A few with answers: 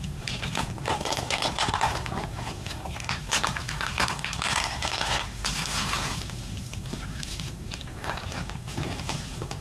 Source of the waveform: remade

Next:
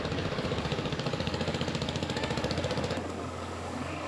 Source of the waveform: remade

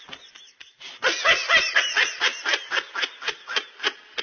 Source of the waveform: recorded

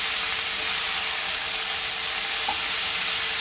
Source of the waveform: recorded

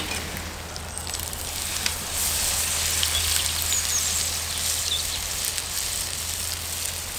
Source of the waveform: recorded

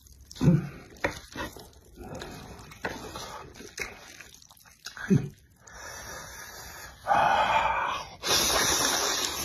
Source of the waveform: recorded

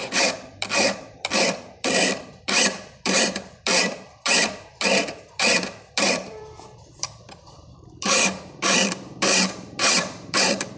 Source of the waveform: remade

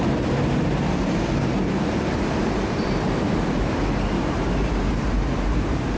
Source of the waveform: remade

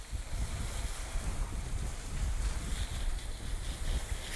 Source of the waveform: recorded